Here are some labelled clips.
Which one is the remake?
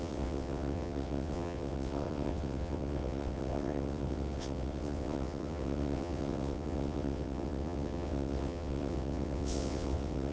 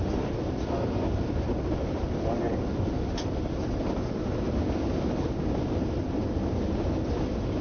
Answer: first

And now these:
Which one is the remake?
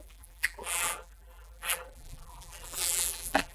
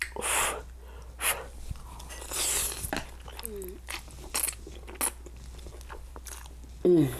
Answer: first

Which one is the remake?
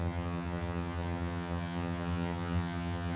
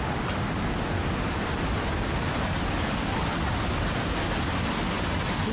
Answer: first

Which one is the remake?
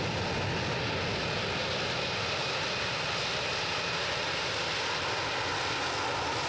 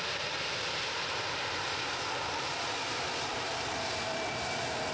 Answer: second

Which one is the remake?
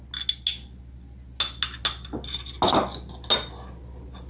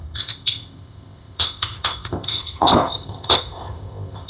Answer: second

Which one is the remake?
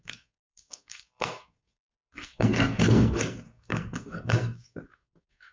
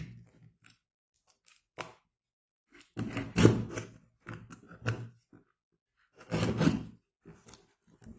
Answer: first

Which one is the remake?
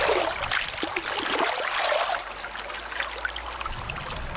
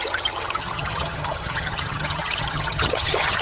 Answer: second